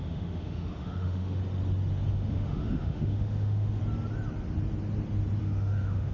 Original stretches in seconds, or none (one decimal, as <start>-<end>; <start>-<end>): 1.4-2.1; 3.8-5.4